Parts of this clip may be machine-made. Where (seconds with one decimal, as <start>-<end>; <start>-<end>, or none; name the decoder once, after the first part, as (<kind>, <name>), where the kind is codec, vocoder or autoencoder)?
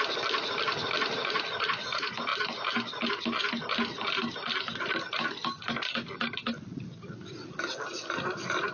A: none